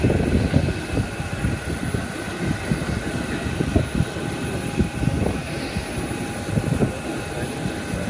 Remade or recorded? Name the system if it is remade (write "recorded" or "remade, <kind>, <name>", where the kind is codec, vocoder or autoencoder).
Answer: recorded